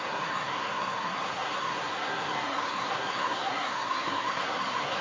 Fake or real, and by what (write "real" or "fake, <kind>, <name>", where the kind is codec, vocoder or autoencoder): fake, codec, SNAC